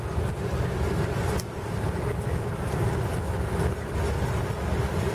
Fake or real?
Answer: real